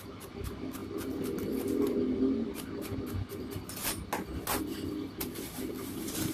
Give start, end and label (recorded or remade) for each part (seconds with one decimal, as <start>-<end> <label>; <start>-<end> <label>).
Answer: 0.0-0.8 remade; 0.8-4.6 recorded; 4.6-6.3 remade

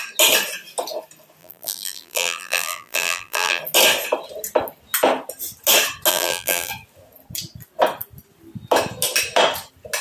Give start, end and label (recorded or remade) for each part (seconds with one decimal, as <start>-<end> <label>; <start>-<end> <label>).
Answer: 0.0-1.4 recorded; 1.4-3.6 remade; 3.6-6.1 recorded; 6.1-6.7 remade; 6.7-10.0 recorded

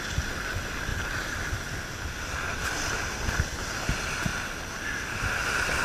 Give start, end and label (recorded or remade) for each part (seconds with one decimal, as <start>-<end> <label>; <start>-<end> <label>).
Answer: 0.0-5.8 recorded

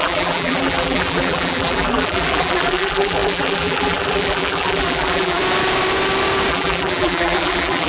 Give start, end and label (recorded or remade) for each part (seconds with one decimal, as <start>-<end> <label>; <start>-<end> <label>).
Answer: 0.0-5.4 remade; 5.4-6.5 recorded; 6.5-7.9 remade